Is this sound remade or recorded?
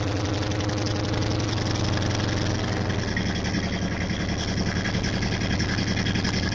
recorded